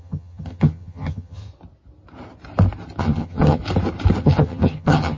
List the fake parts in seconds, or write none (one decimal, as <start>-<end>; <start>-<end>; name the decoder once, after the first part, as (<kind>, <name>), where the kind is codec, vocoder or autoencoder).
0.0-1.5 (vocoder, HiFi-GAN); 3.0-3.6; 4.2-5.2